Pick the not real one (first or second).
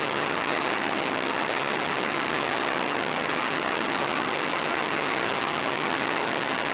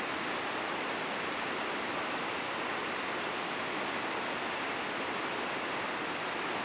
first